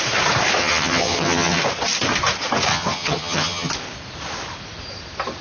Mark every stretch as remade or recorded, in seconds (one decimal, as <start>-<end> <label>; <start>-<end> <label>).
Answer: 0.0-0.6 recorded; 0.6-1.6 remade; 1.6-2.7 recorded; 2.7-3.7 remade; 3.7-5.4 recorded